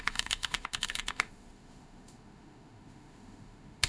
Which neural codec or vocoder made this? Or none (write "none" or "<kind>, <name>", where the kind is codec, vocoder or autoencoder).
autoencoder, DAC-VAE